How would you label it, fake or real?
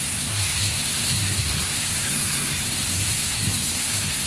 fake